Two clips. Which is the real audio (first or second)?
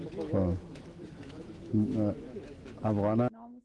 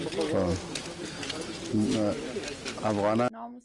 second